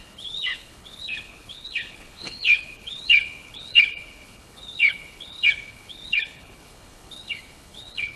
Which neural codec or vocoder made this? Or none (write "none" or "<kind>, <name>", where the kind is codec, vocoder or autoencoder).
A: codec, HILCodec